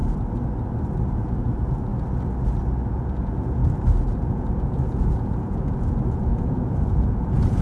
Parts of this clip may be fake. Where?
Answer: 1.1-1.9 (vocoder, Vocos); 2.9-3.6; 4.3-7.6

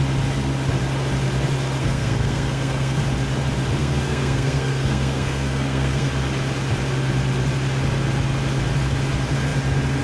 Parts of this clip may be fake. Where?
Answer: 1.8-3.0 (codec, SNAC); 3.8-6.1

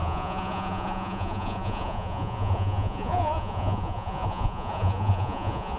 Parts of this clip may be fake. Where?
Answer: 0.0-5.8 (vocoder, Vocos)

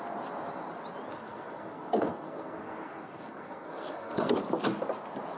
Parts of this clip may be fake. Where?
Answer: 1.1-4.3 (codec, SNAC)

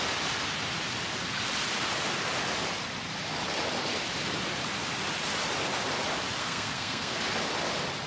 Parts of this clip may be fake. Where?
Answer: 6.4-7.2 (codec, SNAC)